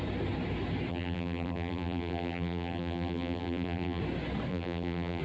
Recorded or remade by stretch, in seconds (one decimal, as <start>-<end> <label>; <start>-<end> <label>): 0.0-0.9 recorded; 0.9-4.0 remade; 4.0-4.5 recorded; 4.5-5.2 remade